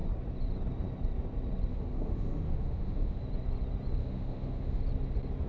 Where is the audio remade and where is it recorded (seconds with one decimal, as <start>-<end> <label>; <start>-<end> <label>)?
0.0-1.7 recorded; 1.7-3.2 remade; 3.2-4.0 recorded; 4.0-4.8 remade; 4.8-5.5 recorded